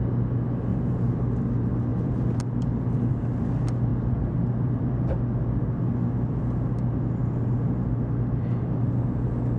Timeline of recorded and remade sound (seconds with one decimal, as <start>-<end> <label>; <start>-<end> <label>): 0.0-0.7 recorded; 0.7-1.2 remade; 1.2-9.6 recorded